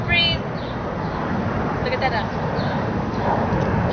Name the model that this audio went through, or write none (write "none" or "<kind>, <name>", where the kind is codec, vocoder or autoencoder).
none